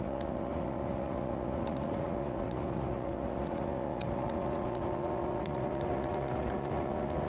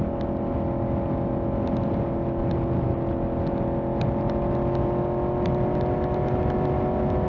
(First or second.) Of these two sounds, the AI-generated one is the first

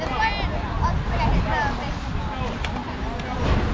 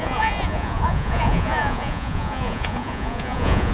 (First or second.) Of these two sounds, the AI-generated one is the second